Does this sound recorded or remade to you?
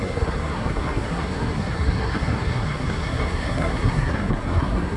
remade